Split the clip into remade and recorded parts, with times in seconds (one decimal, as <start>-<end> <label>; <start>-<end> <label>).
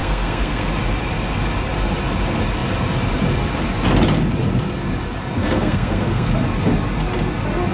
0.0-0.7 remade; 0.7-5.4 recorded; 5.4-6.3 remade; 6.3-7.7 recorded